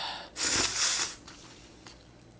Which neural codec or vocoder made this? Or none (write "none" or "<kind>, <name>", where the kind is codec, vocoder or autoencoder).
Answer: none